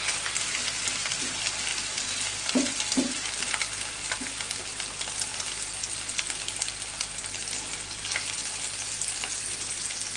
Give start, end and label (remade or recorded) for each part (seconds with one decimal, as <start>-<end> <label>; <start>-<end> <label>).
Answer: 0.0-1.7 recorded; 1.7-4.6 remade; 4.6-5.3 recorded; 5.3-5.8 remade; 5.8-10.2 recorded